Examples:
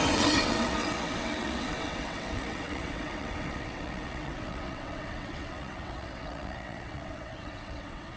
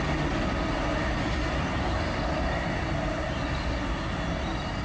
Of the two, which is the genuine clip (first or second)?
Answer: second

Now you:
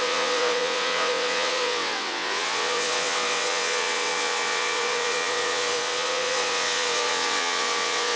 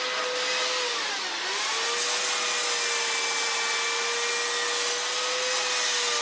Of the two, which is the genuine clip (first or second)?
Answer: second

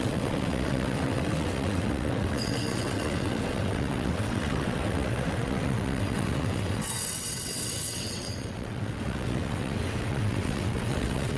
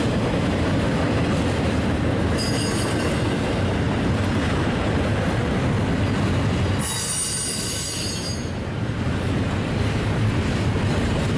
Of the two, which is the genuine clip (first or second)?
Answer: second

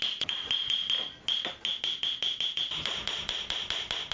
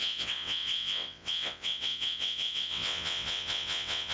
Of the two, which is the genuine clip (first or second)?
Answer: first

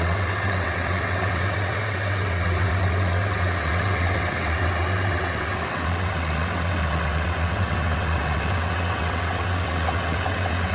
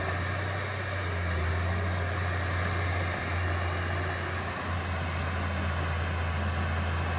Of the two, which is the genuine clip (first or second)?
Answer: second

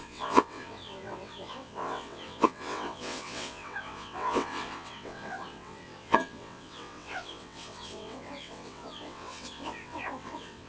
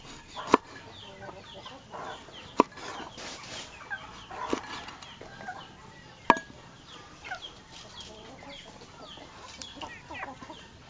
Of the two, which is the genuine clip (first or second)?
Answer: second